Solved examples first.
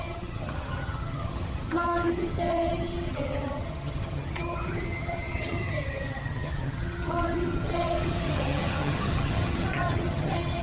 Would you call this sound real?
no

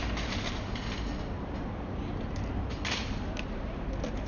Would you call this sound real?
yes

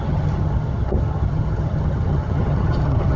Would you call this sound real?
no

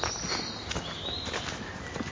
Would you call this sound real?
yes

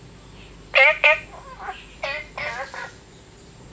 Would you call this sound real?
yes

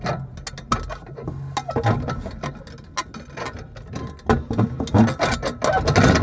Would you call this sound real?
yes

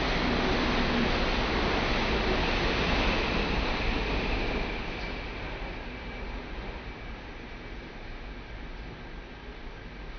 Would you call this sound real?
yes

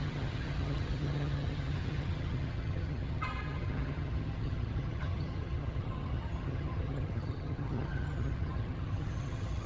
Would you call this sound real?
no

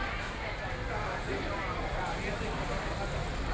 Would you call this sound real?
yes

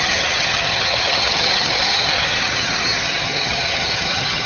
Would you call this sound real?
no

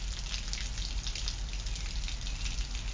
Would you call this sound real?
yes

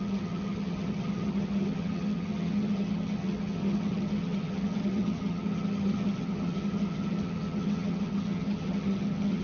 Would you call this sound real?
no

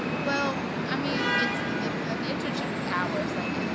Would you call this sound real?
yes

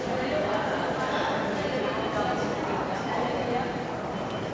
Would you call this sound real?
yes